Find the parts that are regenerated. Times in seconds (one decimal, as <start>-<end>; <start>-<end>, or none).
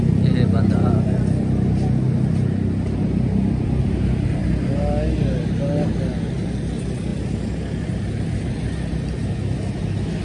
none